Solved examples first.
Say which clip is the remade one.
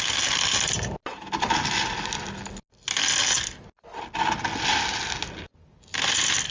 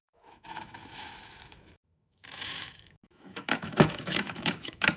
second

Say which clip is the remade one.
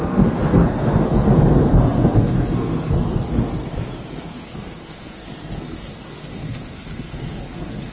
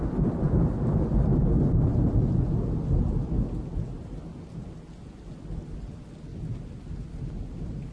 first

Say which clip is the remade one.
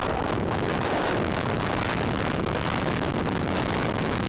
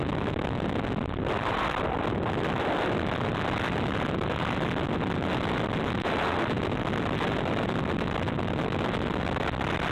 first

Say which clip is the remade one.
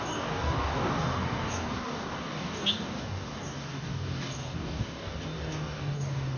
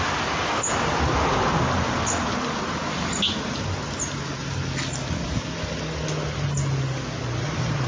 first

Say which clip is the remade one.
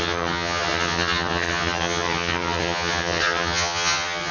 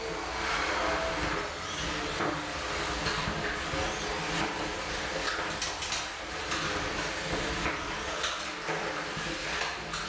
first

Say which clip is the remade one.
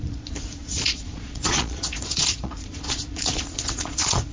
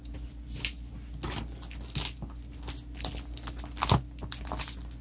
first